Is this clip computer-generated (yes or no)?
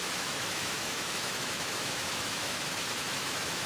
yes